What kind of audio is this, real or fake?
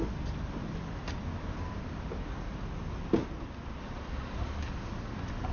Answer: real